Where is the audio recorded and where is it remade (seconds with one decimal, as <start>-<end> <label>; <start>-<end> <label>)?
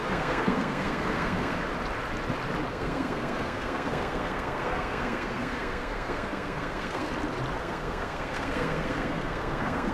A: 0.0-1.6 remade; 1.6-2.7 recorded; 2.7-7.1 remade; 7.1-7.6 recorded; 7.6-9.9 remade